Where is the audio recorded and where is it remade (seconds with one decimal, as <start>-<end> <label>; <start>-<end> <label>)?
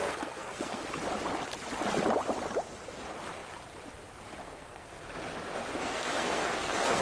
0.0-0.8 remade; 0.8-4.4 recorded; 4.4-5.0 remade; 5.0-5.8 recorded; 5.8-7.0 remade